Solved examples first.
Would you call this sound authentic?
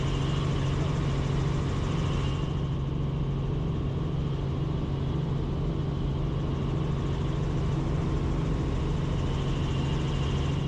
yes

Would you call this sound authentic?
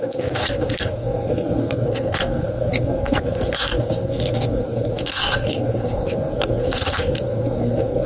no